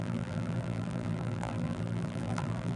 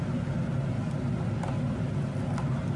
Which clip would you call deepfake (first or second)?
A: first